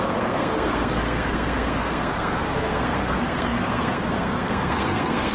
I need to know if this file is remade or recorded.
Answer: remade